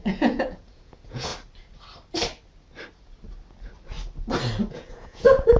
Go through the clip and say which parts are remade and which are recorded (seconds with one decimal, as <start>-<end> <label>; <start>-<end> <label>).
0.0-1.3 remade; 1.3-4.7 recorded; 4.7-5.6 remade